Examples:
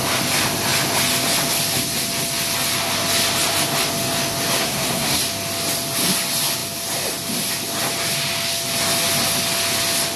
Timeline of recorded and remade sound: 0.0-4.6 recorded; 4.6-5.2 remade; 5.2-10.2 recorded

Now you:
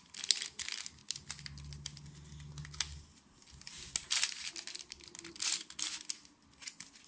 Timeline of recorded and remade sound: 0.0-7.1 recorded

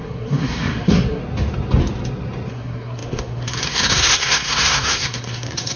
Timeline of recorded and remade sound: 0.0-1.2 remade; 1.2-2.5 recorded; 2.5-5.8 remade

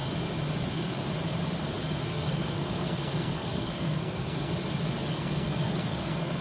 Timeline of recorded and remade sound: 0.0-0.6 recorded; 0.6-1.0 remade; 1.0-2.1 recorded; 2.1-4.5 remade; 4.5-5.1 recorded; 5.1-6.4 remade

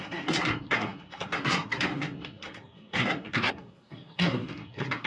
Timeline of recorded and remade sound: 0.0-5.1 remade

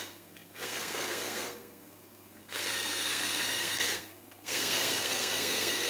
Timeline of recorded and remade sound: 0.0-5.9 remade

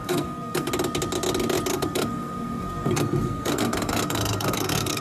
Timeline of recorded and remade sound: 0.0-0.7 remade; 0.7-1.7 recorded; 1.7-5.0 remade

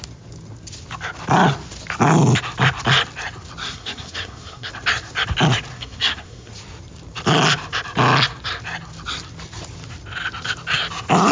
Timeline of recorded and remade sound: 0.0-3.6 recorded; 3.6-4.7 remade; 4.7-5.7 recorded; 5.7-6.5 remade; 6.5-11.3 recorded